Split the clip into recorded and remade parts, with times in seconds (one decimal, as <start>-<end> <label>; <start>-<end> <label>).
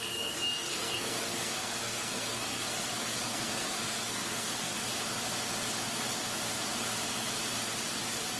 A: 0.0-4.7 remade; 4.7-8.4 recorded